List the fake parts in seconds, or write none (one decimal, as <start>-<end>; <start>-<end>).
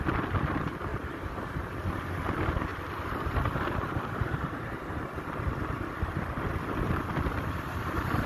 0.9-2.0; 2.7-7.2